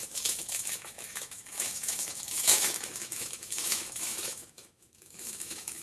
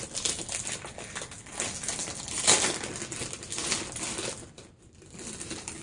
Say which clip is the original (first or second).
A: second